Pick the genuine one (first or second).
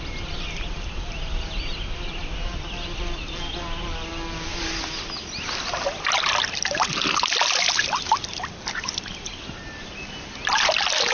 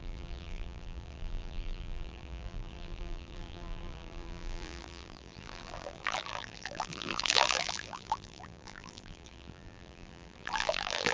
first